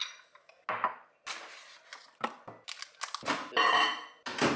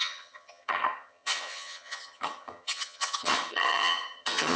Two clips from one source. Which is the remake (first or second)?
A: second